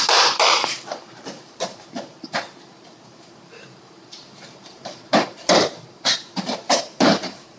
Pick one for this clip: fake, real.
fake